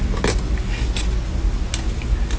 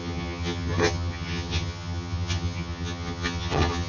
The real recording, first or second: first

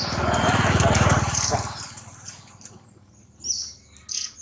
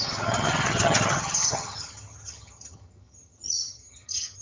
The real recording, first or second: first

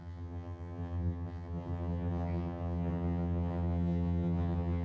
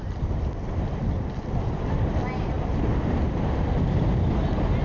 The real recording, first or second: second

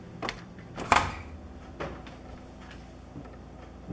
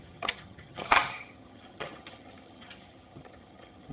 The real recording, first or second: first